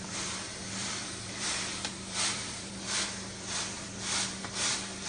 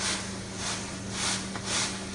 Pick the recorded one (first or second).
second